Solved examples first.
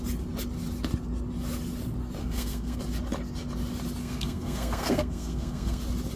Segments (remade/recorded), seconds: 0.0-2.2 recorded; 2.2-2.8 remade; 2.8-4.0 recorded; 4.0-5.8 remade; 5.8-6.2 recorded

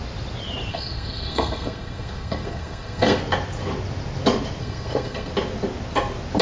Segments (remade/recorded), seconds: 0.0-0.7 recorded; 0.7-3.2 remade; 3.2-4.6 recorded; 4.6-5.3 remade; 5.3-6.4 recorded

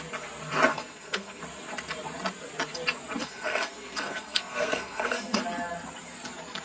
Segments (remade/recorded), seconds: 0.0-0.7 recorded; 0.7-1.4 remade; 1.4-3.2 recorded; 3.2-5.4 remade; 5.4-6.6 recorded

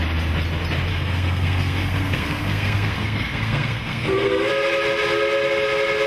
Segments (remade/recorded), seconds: 0.0-0.9 recorded; 0.9-4.5 remade; 4.5-6.1 recorded

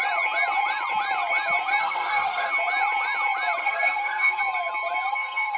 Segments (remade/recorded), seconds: 0.0-1.8 recorded; 1.8-2.5 remade; 2.5-3.6 recorded; 3.6-4.4 remade; 4.4-5.1 recorded; 5.1-5.6 remade